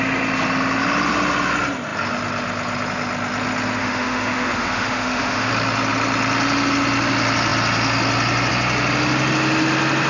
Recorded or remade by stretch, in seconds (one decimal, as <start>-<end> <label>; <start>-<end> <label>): 0.0-3.8 recorded; 3.8-5.5 remade; 5.5-10.1 recorded